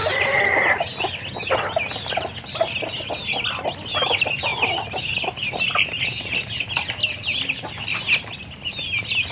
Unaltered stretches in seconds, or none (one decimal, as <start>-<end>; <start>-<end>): 0.0-9.3